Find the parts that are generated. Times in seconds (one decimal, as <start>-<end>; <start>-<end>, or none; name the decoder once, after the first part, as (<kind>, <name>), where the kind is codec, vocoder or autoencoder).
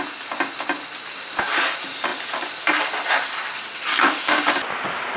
3.9-4.5 (codec, DAC)